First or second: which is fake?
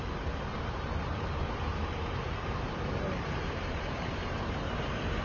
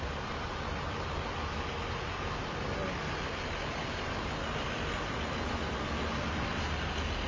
first